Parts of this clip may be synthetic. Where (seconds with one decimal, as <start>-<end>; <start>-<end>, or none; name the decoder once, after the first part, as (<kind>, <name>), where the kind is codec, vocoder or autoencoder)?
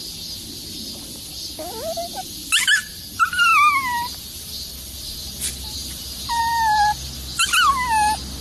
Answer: 5.8-6.4 (vocoder, BigVGAN v2)